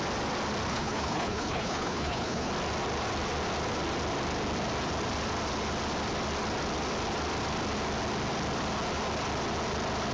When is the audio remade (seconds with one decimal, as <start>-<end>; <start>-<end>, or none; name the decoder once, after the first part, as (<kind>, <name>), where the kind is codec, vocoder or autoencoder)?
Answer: 0.7-2.5 (codec, HILCodec)